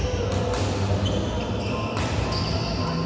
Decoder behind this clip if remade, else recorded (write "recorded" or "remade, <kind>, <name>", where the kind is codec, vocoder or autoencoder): recorded